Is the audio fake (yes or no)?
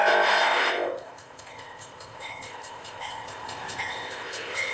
yes